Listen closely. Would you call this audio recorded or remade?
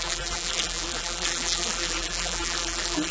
remade